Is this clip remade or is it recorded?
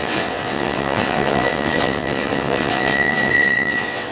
remade